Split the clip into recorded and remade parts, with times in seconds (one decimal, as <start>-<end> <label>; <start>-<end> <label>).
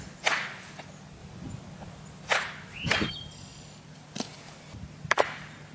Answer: 0.0-5.7 recorded